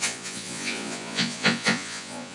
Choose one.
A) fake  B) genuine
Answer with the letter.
A